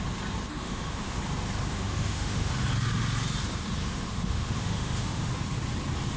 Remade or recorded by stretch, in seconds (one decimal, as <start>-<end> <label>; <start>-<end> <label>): 0.0-0.5 recorded; 0.5-1.2 remade; 1.2-1.7 recorded; 1.7-2.5 remade; 2.5-3.8 recorded; 3.8-5.3 remade; 5.3-6.2 recorded